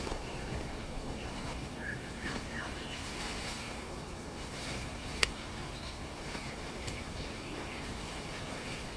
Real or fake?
fake